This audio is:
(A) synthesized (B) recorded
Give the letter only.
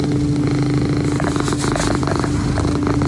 B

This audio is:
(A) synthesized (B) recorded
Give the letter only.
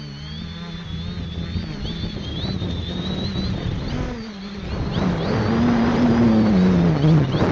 B